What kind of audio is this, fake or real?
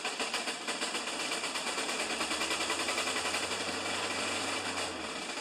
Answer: fake